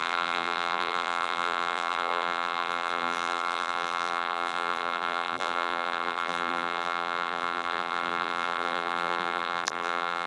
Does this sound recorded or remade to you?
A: remade